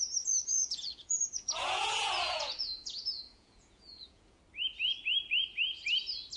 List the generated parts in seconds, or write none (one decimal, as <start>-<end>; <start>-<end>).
0.6-4.4